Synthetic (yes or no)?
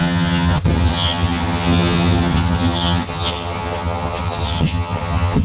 yes